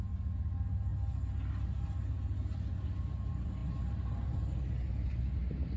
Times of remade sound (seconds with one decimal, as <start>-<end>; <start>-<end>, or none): none